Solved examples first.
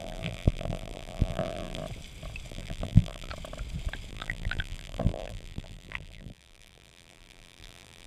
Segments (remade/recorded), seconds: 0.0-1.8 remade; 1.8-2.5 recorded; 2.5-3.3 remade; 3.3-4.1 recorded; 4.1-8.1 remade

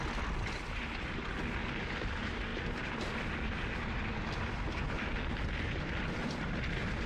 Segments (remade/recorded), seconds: 0.0-7.1 recorded

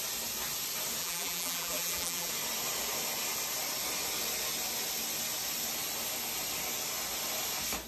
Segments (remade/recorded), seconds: 0.0-1.0 recorded; 1.0-2.3 remade; 2.3-7.9 recorded

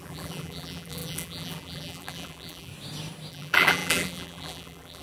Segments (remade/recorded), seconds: 0.0-2.7 remade; 2.7-3.3 recorded; 3.3-5.0 remade